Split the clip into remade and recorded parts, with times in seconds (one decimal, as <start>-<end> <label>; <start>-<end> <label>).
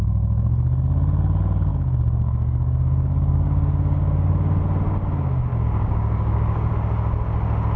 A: 0.0-1.7 recorded; 1.7-4.6 remade; 4.6-5.5 recorded; 5.5-6.7 remade; 6.7-7.8 recorded